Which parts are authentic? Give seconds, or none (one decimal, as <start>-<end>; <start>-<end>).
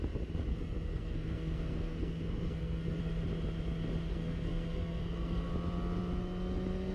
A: 0.0-0.5; 3.0-4.1; 5.5-6.9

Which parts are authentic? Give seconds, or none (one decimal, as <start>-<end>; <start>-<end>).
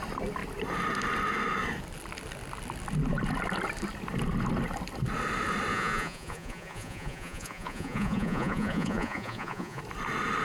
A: 0.0-5.7; 9.8-10.4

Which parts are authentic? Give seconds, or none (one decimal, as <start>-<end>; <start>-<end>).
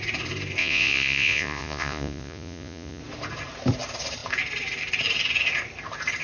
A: 0.0-0.6; 3.0-6.2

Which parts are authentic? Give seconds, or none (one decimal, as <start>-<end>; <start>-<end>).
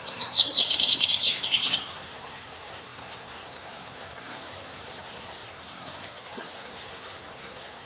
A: none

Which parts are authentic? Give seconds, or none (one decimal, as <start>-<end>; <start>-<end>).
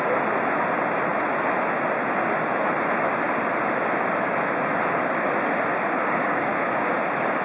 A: 0.0-5.7; 7.0-7.4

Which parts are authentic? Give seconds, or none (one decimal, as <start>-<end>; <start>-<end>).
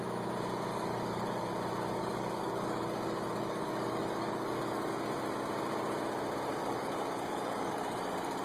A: 0.0-0.7; 1.5-2.0; 4.9-6.5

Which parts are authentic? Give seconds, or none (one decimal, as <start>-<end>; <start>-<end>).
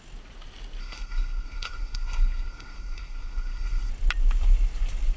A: 0.0-0.8; 3.9-5.2